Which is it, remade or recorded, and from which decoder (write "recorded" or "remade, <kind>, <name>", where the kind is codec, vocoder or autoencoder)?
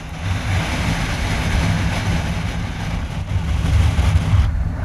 recorded